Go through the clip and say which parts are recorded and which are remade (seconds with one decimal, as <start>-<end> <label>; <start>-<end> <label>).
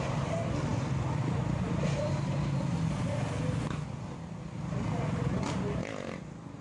0.0-6.6 recorded